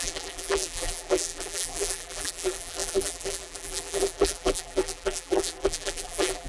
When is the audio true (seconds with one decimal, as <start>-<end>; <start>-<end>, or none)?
none